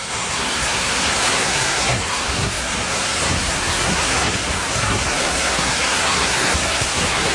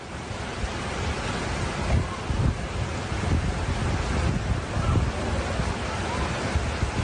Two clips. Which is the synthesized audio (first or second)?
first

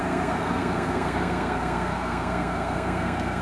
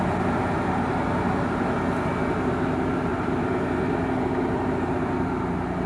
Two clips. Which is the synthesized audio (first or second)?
first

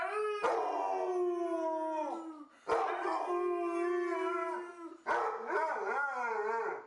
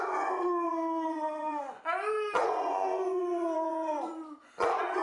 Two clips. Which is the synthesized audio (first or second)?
second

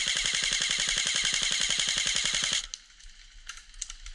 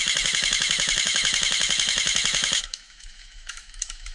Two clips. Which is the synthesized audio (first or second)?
second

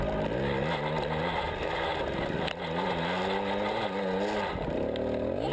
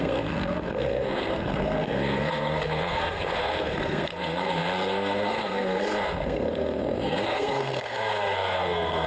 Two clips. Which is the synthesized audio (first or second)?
second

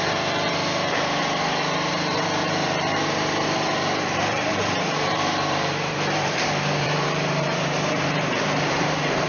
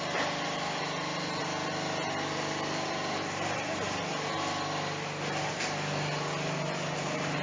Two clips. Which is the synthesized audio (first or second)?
first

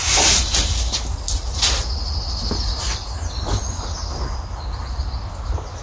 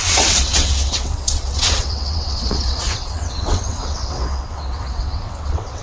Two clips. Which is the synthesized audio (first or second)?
second